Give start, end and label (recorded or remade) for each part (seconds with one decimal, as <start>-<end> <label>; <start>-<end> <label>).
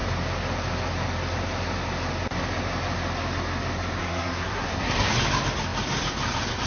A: 0.0-4.0 recorded; 4.0-5.1 remade; 5.1-6.7 recorded